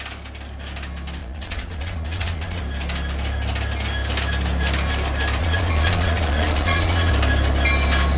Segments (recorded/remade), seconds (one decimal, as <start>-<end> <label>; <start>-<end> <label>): 0.0-1.2 recorded; 1.2-2.6 remade; 2.6-5.4 recorded; 5.4-7.1 remade; 7.1-8.2 recorded